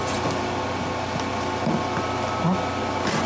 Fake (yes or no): no